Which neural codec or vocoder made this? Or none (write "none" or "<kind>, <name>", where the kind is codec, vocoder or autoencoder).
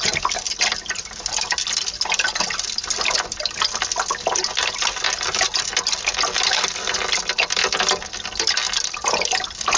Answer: none